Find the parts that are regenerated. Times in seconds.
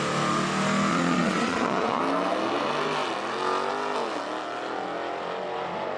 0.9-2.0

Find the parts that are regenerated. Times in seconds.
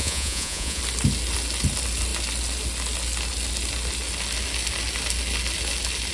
0.0-0.8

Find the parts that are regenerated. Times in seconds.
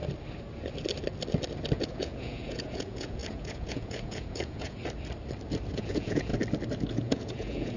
1.7-4.8; 5.7-6.3; 6.9-7.8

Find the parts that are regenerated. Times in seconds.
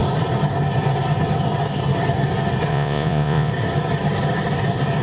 2.7-3.5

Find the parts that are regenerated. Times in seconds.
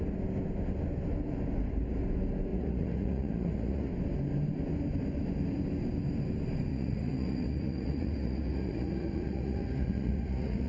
2.5-3.9; 6.7-10.7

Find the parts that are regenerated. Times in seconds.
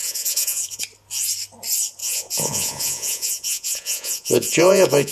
0.0-0.8; 2.0-5.1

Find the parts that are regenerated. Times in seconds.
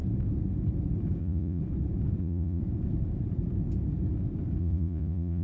1.2-1.6; 2.2-2.6; 4.6-5.4